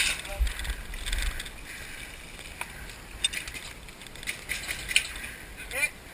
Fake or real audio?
real